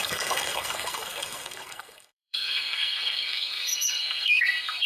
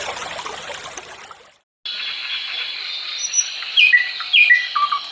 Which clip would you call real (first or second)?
second